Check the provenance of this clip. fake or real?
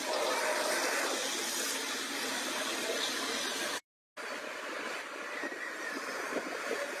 real